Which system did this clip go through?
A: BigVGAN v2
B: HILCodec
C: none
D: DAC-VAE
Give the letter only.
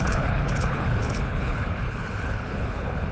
B